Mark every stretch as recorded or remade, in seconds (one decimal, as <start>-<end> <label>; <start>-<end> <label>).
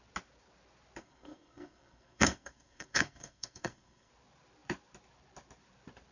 0.0-1.0 recorded; 1.0-4.1 remade; 4.1-6.1 recorded